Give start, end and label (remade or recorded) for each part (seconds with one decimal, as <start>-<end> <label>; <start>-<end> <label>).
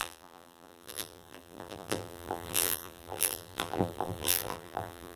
0.0-5.2 remade